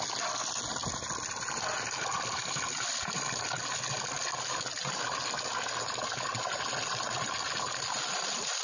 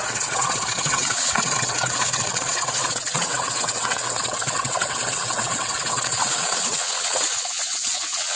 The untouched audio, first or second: first